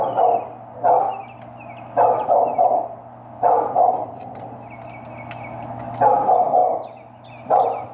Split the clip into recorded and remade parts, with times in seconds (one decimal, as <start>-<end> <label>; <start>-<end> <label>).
0.0-7.9 recorded